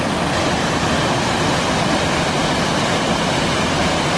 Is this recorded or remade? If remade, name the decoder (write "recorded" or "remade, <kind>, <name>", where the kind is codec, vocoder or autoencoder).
recorded